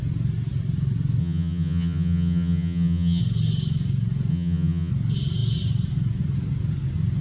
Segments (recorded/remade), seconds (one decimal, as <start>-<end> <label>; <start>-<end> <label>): 0.0-1.2 recorded; 1.2-3.2 remade; 3.2-4.3 recorded; 4.3-4.9 remade; 4.9-7.2 recorded